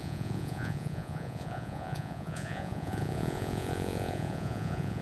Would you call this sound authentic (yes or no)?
no